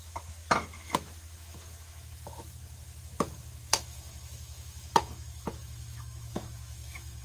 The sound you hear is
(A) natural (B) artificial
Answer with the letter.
B